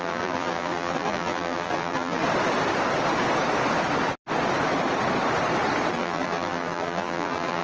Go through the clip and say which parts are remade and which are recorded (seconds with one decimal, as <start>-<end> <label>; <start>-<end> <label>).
0.0-2.2 remade; 2.2-5.9 recorded; 5.9-7.6 remade